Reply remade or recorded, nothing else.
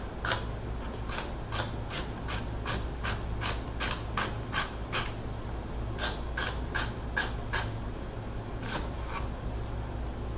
recorded